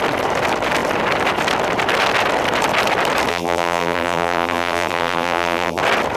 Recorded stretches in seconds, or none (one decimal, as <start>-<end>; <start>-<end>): 0.0-3.3; 5.8-6.2